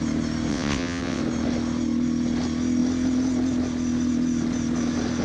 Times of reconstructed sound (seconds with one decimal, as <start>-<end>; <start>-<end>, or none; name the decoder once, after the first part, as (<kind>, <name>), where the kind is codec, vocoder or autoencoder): 0.5-1.2 (vocoder, WaveNeXt)